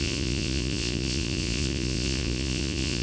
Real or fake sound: fake